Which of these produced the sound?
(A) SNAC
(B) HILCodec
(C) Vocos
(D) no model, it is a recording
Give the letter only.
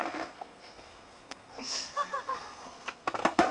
A